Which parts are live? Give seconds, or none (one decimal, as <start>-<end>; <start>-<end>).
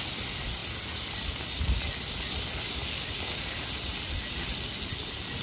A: 0.0-5.4